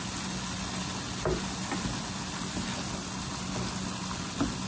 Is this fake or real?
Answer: real